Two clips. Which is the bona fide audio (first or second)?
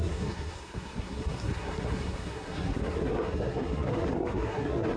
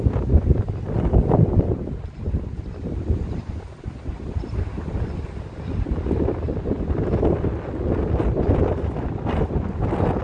second